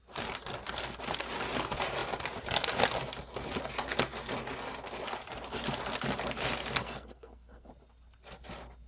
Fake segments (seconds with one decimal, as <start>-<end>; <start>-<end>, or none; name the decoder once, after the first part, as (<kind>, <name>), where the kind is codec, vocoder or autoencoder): 6.8-7.7 (codec, SNAC)